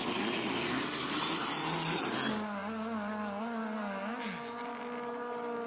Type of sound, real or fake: real